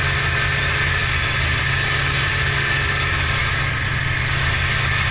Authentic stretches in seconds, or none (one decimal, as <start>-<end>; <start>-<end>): 0.0-5.1